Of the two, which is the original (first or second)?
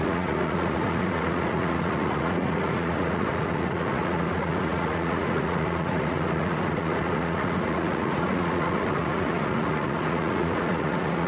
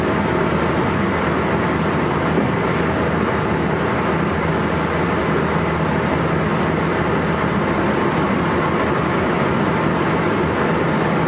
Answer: second